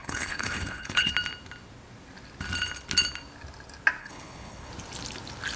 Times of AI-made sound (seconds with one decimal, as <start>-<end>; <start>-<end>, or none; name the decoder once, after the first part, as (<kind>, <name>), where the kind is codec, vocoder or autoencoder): 0.0-1.1 (codec, HILCodec); 4.0-4.7